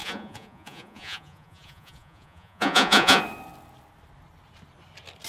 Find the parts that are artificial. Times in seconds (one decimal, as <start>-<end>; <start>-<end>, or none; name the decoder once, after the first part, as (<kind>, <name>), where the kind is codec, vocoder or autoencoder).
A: 0.0-3.2 (vocoder, Vocos)